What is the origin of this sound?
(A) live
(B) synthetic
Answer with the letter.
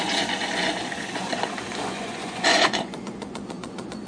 B